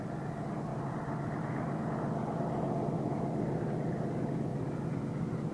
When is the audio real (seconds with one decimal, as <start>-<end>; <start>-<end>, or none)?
0.0-5.5